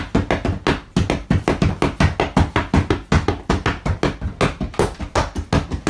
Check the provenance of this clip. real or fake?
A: real